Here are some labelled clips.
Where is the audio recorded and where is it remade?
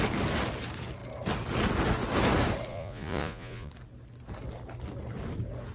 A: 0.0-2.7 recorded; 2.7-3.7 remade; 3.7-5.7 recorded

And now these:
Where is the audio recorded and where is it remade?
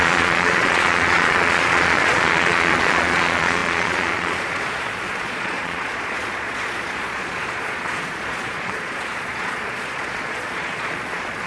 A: 0.0-11.5 remade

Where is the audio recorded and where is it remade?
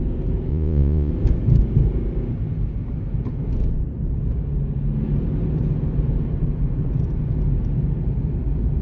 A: 0.0-0.5 recorded; 0.5-1.1 remade; 1.1-8.8 recorded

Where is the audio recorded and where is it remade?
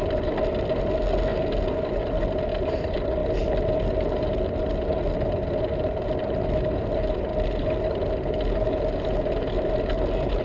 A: 0.0-10.4 recorded